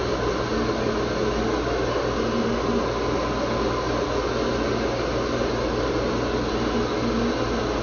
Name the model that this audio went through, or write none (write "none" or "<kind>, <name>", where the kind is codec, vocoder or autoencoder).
none